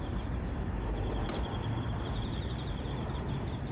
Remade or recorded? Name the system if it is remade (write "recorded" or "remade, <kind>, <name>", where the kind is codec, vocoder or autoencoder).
remade, vocoder, BigVGAN v2